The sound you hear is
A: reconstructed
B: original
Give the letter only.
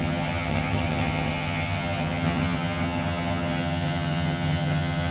A